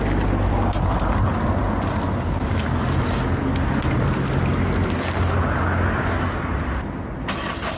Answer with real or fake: real